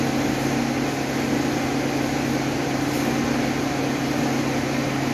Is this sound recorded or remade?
recorded